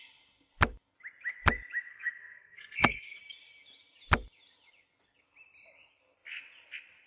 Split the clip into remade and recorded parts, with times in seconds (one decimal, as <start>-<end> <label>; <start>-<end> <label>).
0.0-1.9 recorded; 1.9-3.2 remade; 3.2-7.1 recorded